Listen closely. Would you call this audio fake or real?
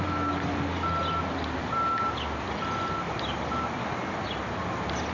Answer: real